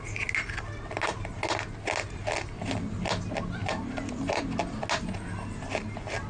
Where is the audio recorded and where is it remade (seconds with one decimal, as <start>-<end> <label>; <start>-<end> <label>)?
0.0-3.6 recorded; 3.6-4.4 remade; 4.4-6.3 recorded